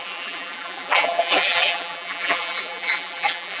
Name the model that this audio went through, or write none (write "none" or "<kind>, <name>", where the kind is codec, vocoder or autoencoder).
vocoder, BigVGAN v2